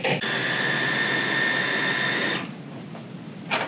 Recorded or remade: recorded